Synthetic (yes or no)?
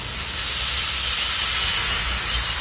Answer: no